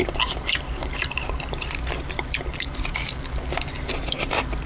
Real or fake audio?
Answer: fake